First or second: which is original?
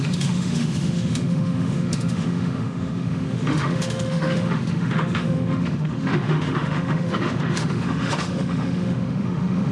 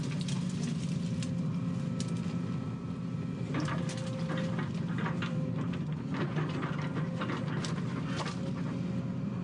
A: second